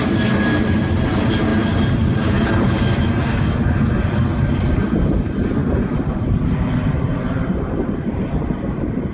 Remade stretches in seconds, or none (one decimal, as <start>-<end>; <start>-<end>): none